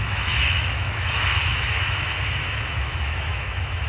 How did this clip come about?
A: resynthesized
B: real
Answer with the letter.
A